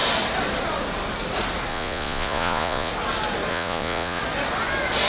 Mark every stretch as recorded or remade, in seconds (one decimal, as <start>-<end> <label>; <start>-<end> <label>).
0.0-1.7 recorded; 1.7-2.9 remade; 2.9-3.5 recorded; 3.5-4.2 remade; 4.2-5.1 recorded